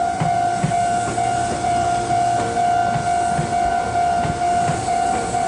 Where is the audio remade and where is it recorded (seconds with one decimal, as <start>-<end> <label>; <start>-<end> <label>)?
0.0-2.8 remade; 2.8-3.7 recorded; 3.7-5.5 remade